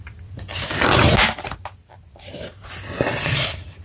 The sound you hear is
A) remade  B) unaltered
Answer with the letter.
B